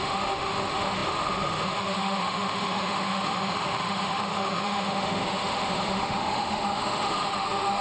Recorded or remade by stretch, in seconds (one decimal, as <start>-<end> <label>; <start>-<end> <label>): 0.0-7.8 remade